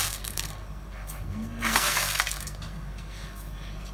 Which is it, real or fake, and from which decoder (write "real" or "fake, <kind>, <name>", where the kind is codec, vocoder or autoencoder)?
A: fake, codec, SNAC